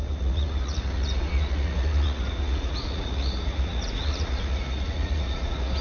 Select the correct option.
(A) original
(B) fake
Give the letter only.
B